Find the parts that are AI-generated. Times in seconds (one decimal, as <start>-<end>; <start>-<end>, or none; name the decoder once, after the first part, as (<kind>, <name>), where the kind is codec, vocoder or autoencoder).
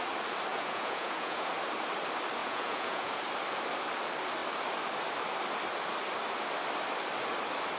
0.5-1.5 (vocoder, Vocos); 2.4-3.2